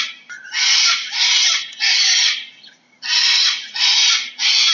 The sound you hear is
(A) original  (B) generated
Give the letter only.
A